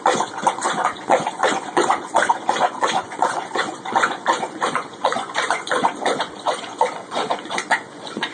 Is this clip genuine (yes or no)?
no